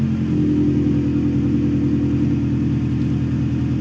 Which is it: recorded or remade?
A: recorded